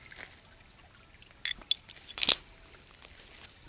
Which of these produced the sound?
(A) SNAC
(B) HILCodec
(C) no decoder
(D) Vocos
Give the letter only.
C